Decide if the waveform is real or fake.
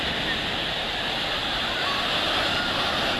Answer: real